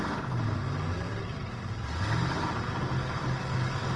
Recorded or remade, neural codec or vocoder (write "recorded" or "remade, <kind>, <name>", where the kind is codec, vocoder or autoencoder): recorded